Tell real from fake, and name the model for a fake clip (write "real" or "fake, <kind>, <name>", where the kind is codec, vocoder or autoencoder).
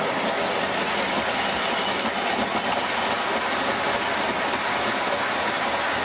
real